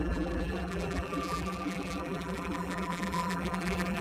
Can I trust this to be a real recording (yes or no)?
no